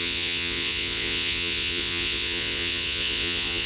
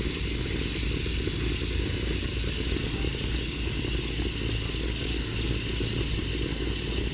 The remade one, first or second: first